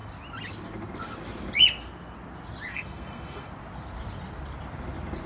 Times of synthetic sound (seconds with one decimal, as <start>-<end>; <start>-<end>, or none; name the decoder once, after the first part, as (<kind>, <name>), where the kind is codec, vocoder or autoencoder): 2.7-3.5 (codec, SNAC)